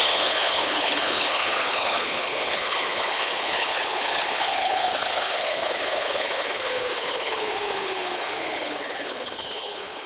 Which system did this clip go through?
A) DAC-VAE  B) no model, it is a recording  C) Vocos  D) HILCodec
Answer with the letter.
D